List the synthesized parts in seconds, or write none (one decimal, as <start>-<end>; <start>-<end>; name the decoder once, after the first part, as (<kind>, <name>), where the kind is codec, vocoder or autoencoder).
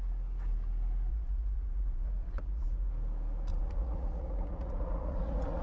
1.1-2.9 (vocoder, Vocos); 3.5-5.6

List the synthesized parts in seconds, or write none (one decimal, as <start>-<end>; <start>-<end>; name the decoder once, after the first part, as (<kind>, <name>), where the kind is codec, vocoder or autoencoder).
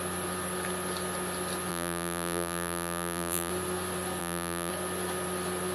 1.7-3.5 (vocoder, BigVGAN v2); 4.2-4.7